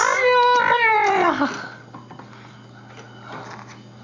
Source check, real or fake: real